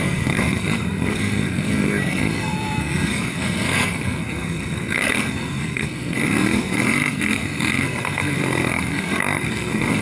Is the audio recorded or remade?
remade